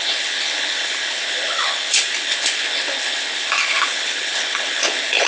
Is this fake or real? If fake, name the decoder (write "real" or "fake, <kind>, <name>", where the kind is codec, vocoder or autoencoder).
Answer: fake, codec, HILCodec